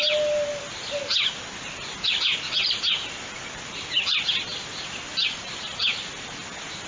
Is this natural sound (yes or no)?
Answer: yes